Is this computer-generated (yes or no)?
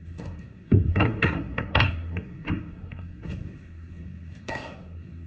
yes